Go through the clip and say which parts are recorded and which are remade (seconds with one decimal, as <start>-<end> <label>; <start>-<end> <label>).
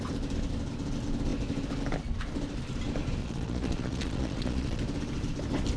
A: 0.0-3.2 recorded; 3.2-4.8 remade; 4.8-5.8 recorded